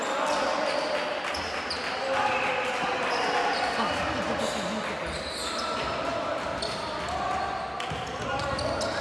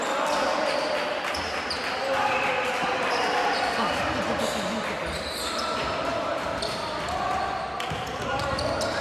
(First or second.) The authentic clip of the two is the first